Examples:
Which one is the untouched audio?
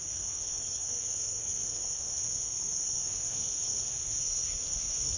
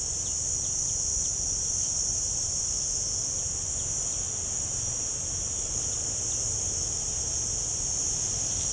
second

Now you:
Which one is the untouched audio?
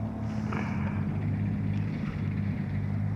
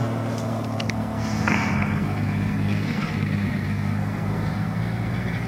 first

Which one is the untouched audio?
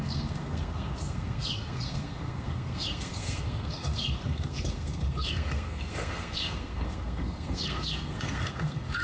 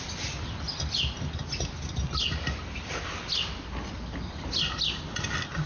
second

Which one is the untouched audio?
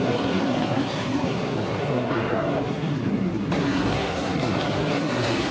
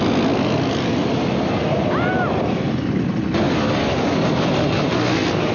second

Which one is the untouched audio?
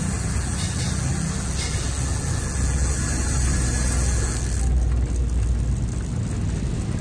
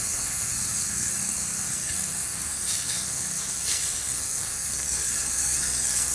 first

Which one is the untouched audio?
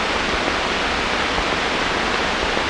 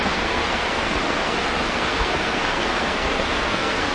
first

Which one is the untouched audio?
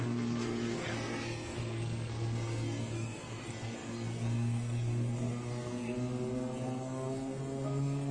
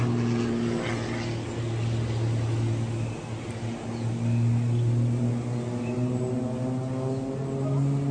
second